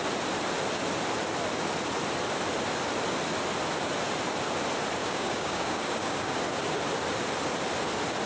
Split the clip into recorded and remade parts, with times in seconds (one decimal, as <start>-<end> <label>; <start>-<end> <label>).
0.0-5.0 recorded; 5.0-6.4 remade; 6.4-8.3 recorded